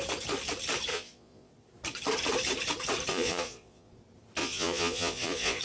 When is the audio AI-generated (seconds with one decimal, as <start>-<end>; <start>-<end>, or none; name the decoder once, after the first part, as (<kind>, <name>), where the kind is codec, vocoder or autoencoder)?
0.9-1.5 (vocoder, Vocos); 3.1-3.9; 4.4-5.6